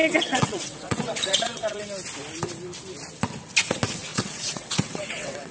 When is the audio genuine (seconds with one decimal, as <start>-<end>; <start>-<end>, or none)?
1.8-4.1